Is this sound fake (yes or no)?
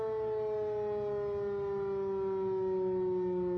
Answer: no